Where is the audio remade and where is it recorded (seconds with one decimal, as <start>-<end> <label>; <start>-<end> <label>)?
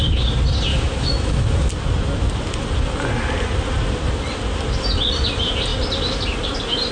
0.0-0.7 recorded; 0.7-1.7 remade; 1.7-6.9 recorded